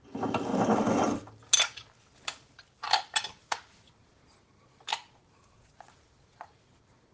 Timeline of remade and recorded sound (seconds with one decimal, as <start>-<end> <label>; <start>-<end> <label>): 0.0-3.4 recorded; 3.4-4.2 remade; 4.2-4.9 recorded; 4.9-7.1 remade